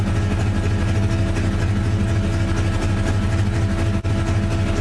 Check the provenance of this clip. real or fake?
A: real